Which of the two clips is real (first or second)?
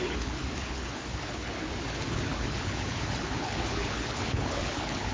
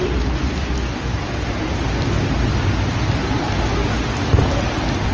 second